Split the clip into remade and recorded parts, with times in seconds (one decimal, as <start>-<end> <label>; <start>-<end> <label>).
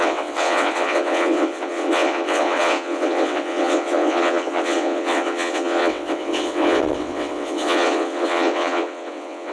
0.0-9.5 remade